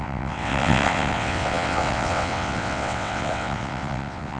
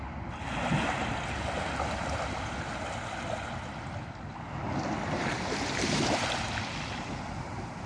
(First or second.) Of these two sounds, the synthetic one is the first